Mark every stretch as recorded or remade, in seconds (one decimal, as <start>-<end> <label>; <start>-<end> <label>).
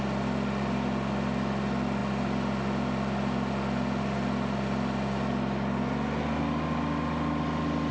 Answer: 0.0-7.9 recorded